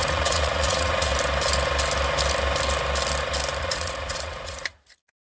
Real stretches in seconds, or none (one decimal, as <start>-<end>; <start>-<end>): 1.1-3.6